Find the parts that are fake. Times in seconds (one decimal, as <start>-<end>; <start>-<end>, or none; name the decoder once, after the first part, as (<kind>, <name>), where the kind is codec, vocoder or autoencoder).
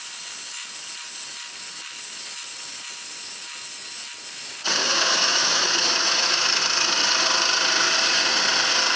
4.8-6.6 (autoencoder, DAC-VAE)